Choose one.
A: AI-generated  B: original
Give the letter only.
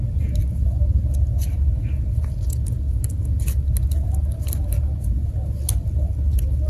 B